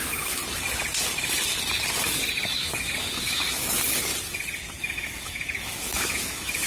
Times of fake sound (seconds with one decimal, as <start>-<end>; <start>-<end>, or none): 0.0-0.4; 2.5-4.1; 4.8-6.7